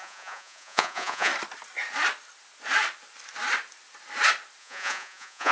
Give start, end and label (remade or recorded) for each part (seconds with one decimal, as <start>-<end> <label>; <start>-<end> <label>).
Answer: 0.0-1.3 remade; 1.3-4.6 recorded; 4.6-5.5 remade